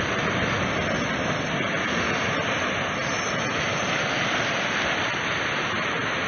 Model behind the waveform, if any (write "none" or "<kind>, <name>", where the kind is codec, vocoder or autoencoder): none